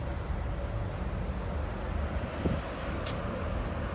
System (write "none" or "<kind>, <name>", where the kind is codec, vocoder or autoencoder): none